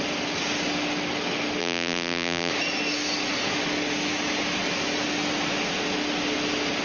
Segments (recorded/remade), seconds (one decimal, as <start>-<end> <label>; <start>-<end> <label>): 0.0-1.6 recorded; 1.6-2.5 remade; 2.5-6.8 recorded